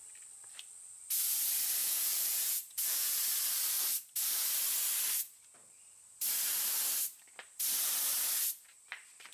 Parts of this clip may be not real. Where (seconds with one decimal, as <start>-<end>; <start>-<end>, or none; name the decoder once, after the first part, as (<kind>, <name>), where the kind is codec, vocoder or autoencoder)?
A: 1.8-3.2 (vocoder, Vocos)